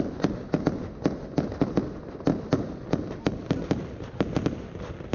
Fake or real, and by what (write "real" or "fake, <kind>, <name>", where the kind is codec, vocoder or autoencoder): real